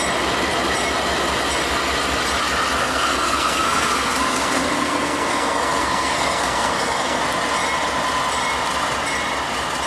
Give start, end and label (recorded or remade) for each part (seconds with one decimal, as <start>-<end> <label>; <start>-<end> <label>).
0.0-2.8 recorded; 2.8-7.2 remade; 7.2-9.9 recorded